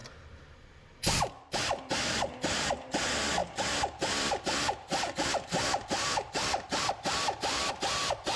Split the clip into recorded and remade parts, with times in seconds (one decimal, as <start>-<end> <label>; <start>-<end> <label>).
0.0-3.4 recorded; 3.4-7.7 remade; 7.7-8.4 recorded